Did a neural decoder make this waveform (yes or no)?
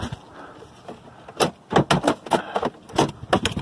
no